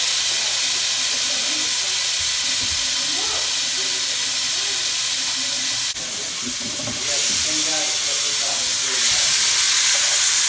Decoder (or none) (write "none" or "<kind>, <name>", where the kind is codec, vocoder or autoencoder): none